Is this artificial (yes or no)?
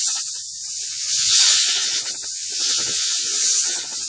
yes